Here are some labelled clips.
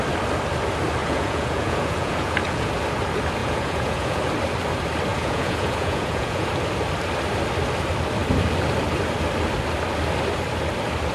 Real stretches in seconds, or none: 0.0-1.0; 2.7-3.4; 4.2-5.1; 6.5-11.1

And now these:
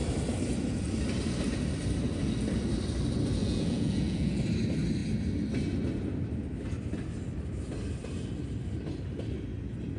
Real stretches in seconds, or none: 0.0-3.4; 4.4-10.0

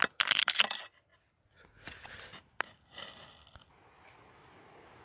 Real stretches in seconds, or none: 0.0-5.0